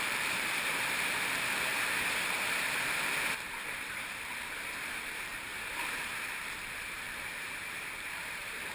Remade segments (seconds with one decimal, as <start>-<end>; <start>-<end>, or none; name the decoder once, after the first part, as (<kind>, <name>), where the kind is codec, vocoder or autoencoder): 0.0-1.7 (vocoder, BigVGAN v2); 3.3-5.3; 6.2-8.7